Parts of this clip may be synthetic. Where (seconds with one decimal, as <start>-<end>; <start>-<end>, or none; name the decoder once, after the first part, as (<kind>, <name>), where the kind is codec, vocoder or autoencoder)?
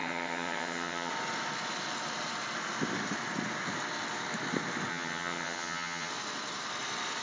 0.0-1.1 (vocoder, HiFi-GAN); 4.9-6.1